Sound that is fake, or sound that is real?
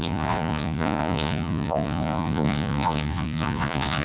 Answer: fake